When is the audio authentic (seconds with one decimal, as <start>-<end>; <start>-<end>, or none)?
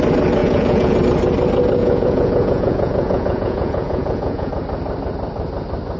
0.0-0.4; 1.0-1.8; 4.5-6.0